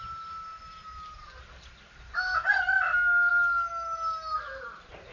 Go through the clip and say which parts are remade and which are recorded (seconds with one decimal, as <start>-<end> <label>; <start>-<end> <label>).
0.0-5.1 recorded

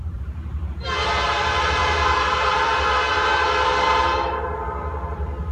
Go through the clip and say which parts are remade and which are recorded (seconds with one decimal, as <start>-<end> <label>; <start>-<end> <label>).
0.0-5.5 remade

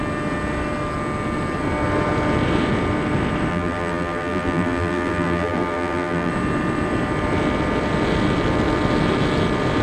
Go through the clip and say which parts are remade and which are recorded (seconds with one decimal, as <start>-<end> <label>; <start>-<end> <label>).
0.0-3.5 recorded; 3.5-6.3 remade; 6.3-9.8 recorded

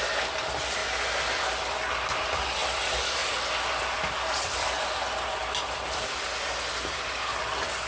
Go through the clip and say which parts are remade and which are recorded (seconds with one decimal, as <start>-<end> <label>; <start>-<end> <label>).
0.0-0.8 recorded; 0.8-1.8 remade; 1.8-2.6 recorded; 2.6-3.2 remade; 3.2-5.4 recorded; 5.4-7.1 remade; 7.1-7.9 recorded

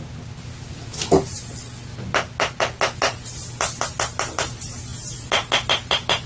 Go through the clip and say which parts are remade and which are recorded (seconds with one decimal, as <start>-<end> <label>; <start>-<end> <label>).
0.0-6.3 recorded